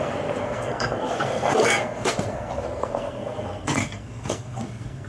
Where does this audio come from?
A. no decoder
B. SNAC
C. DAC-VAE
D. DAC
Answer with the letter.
B